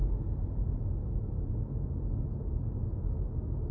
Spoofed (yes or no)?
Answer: no